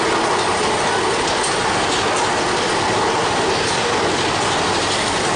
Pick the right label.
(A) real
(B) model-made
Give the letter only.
A